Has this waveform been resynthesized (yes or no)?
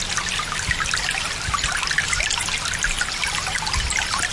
no